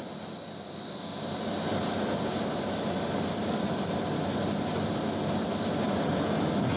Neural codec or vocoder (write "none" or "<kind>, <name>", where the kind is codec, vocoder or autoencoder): none